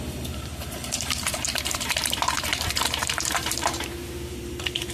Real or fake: fake